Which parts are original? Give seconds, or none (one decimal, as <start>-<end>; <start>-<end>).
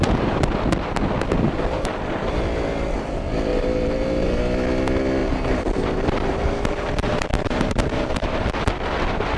0.0-3.5; 4.4-5.2; 8.5-9.4